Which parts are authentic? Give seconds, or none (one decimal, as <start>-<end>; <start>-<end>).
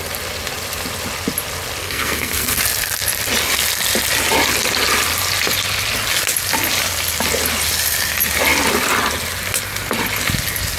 0.0-1.8; 2.6-10.8